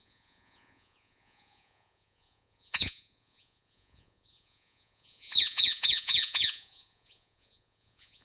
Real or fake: fake